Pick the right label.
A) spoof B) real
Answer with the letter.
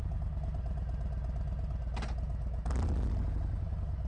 B